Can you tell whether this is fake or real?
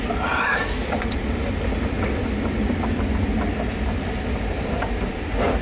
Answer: real